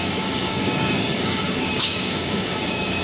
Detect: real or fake fake